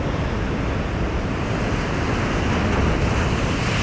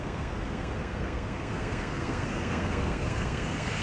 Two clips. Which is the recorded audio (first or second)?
first